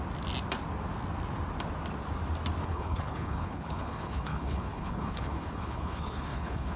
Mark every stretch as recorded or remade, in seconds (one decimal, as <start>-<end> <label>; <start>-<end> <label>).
0.0-2.6 recorded; 2.6-6.8 remade

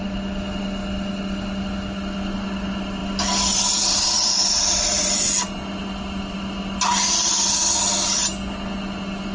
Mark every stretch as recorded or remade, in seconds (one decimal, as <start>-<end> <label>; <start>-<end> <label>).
0.0-9.3 recorded

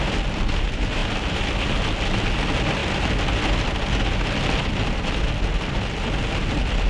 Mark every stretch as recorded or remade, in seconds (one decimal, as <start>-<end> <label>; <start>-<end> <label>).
0.0-6.9 recorded

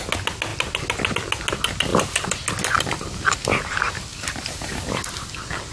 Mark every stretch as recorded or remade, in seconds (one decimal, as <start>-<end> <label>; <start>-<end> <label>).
0.0-4.1 recorded; 4.1-4.8 remade; 4.8-5.7 recorded

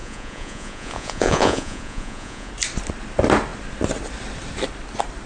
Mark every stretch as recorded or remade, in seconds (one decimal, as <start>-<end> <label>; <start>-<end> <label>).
0.0-2.5 remade; 2.5-5.3 recorded

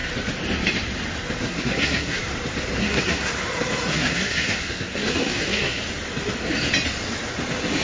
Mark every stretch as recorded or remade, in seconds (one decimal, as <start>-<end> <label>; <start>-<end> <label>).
0.0-1.4 recorded; 1.4-2.2 remade; 2.2-2.8 recorded; 2.8-3.3 remade; 3.3-3.9 recorded; 3.9-5.8 remade; 5.8-7.8 recorded